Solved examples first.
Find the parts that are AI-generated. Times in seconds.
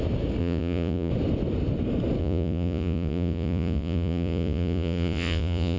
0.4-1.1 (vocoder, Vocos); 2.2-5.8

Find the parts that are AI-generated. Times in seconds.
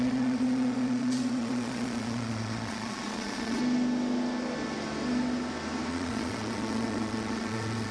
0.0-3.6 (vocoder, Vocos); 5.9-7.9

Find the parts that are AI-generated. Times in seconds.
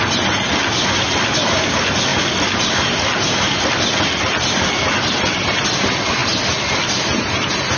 none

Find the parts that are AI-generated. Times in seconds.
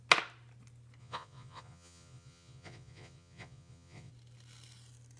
1.0-4.1 (vocoder, Vocos)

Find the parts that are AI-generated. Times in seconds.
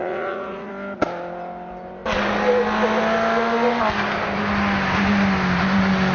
0.0-0.7 (vocoder, Vocos)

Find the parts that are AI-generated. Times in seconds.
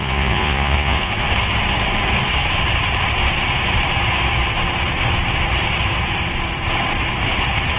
0.0-1.1 (vocoder, Vocos)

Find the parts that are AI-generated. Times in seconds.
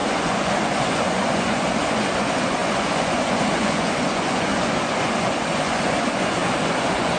0.0-7.2 (vocoder, Vocos)